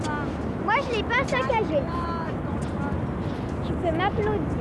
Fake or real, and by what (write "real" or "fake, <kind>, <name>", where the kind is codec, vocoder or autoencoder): real